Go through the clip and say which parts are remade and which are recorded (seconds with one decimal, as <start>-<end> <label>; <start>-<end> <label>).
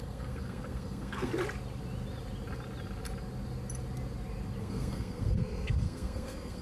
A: 0.0-1.3 remade; 1.3-4.6 recorded; 4.6-6.6 remade